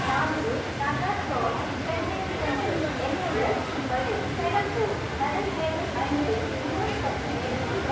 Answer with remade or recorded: recorded